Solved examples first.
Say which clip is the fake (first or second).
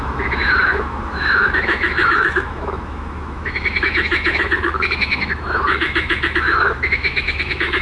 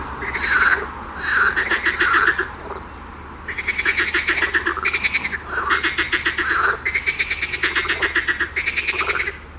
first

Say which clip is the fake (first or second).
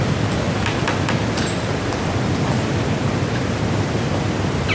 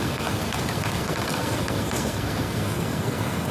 second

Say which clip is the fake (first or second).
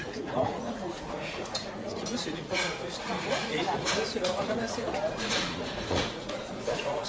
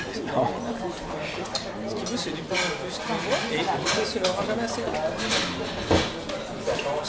first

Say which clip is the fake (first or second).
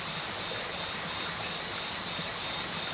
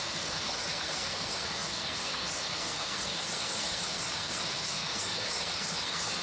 second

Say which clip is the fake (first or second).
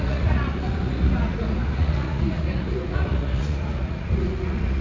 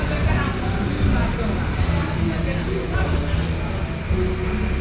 first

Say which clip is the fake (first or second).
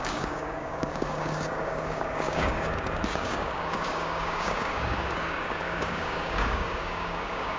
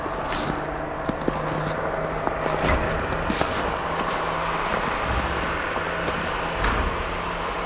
first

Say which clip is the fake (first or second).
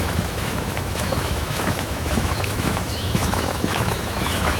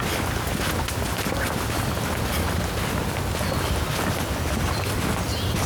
first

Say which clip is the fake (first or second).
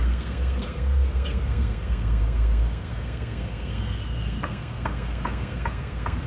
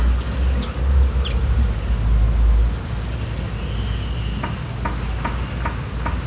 first